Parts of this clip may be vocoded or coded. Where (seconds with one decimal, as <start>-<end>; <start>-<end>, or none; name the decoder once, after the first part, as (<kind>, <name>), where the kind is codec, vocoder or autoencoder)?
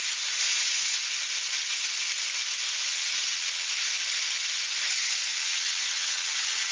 2.9-3.7 (vocoder, WaveNeXt); 5.3-6.7